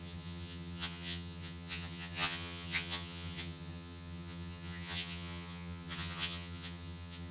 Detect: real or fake fake